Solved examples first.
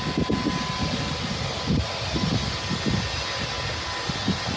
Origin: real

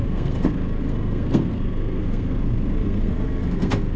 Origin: fake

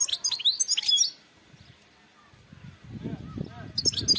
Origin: real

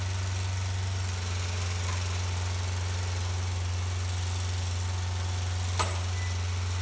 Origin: real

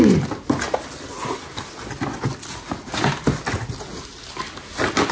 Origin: real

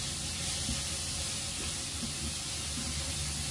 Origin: real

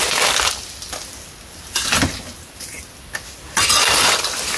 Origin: real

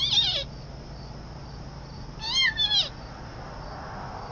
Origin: real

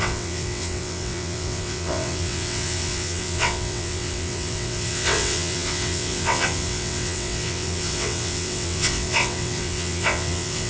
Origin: fake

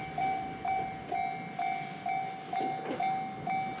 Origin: real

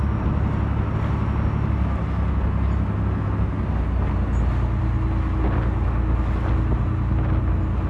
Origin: real